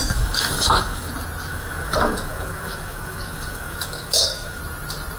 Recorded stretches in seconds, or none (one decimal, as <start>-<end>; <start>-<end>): 1.1-1.5; 4.6-5.2